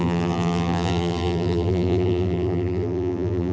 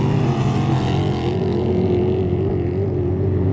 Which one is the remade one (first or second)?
first